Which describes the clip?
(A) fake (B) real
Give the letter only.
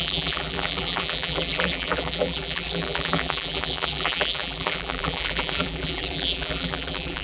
A